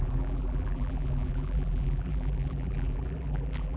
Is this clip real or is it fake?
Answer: fake